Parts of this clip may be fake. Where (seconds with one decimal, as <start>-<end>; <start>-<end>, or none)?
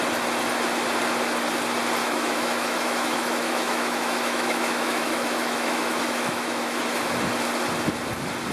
2.0-6.8